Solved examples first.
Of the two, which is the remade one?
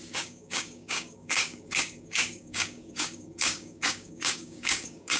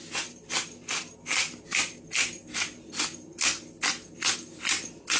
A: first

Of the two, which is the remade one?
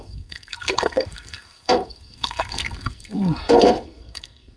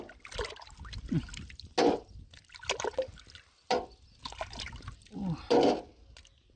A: first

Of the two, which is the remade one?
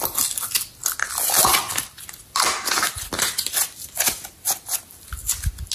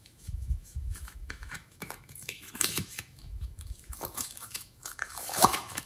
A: second